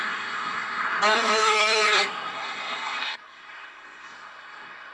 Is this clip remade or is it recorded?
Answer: remade